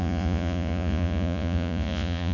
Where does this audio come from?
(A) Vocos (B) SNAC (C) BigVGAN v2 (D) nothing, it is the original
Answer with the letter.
A